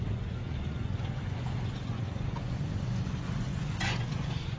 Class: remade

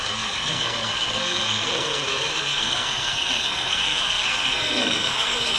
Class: remade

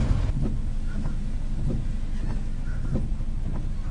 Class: recorded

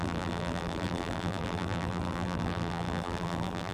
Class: remade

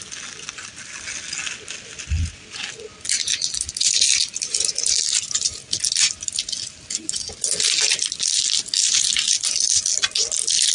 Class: recorded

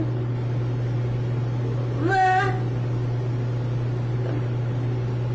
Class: recorded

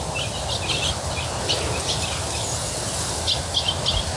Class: recorded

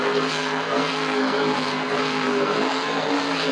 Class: remade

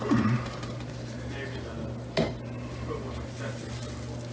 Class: recorded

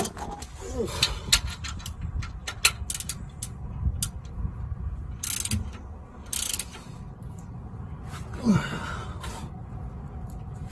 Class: recorded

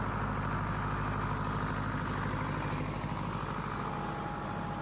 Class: recorded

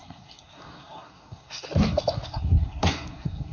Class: remade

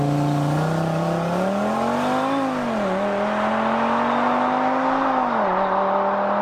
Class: recorded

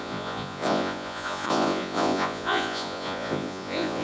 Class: remade